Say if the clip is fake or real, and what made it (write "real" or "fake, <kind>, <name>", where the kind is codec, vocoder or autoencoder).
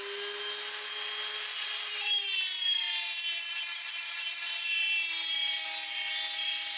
real